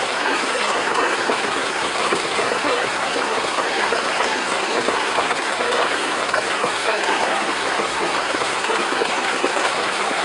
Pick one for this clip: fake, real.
fake